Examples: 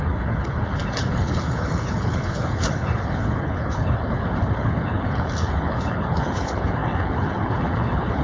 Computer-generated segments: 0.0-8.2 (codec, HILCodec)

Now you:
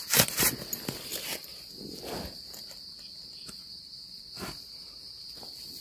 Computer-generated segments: 1.1-1.8 (vocoder, BigVGAN v2); 4.8-5.3

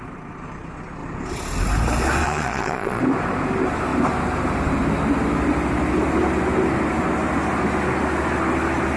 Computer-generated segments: 2.2-3.0 (vocoder, Vocos)

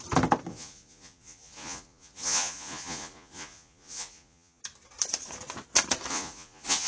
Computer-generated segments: 0.5-4.6 (vocoder, Vocos); 6.1-6.9